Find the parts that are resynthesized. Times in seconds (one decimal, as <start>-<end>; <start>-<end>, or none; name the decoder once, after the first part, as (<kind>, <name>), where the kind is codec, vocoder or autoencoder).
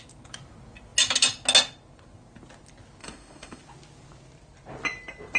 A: 3.0-3.6 (autoencoder, DAC-VAE)